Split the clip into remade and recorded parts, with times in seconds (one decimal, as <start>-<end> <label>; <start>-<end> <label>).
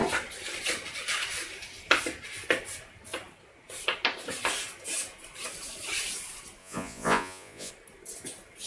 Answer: 0.0-6.6 recorded; 6.6-7.7 remade; 7.7-8.7 recorded